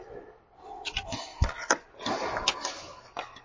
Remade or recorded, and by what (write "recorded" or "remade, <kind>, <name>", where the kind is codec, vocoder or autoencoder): recorded